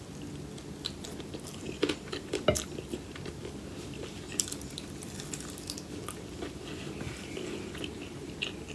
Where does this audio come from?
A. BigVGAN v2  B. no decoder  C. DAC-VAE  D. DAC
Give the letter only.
B